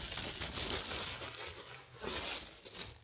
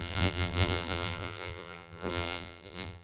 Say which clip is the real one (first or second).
first